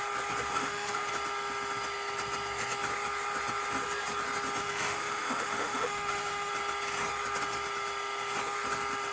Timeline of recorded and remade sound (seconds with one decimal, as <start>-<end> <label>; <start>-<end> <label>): 0.0-0.5 recorded; 0.5-1.1 remade; 1.1-4.6 recorded; 4.6-6.5 remade; 6.5-9.1 recorded